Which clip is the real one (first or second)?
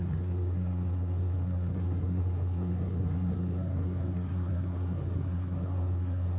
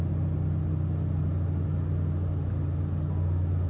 second